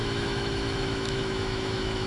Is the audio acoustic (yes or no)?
no